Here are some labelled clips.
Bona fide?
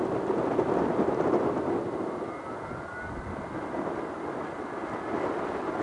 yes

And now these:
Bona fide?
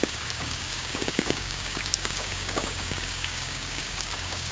no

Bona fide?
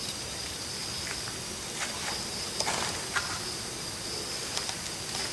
yes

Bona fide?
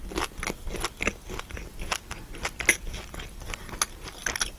yes